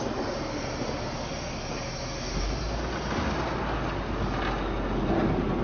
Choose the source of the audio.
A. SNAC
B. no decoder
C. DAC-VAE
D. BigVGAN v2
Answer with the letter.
B